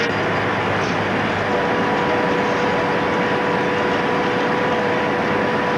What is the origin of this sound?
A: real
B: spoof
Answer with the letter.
A